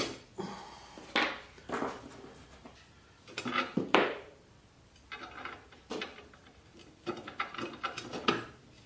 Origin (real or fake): real